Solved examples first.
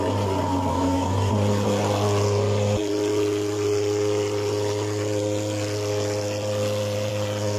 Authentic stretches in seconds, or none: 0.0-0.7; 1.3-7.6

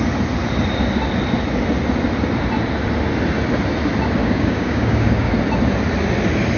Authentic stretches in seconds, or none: 0.0-4.2; 5.3-6.6